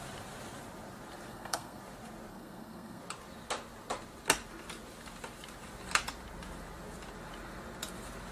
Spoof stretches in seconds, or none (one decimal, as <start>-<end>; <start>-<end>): 1.3-1.8; 2.3-3.0